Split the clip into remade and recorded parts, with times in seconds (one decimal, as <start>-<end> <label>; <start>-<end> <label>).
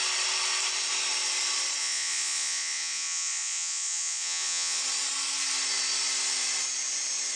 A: 0.0-1.8 recorded; 1.8-4.8 remade; 4.8-7.4 recorded